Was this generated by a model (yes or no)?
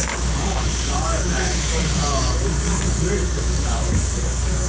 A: yes